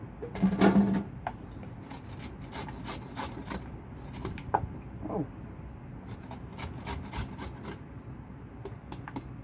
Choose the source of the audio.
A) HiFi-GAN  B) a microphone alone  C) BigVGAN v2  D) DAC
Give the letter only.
B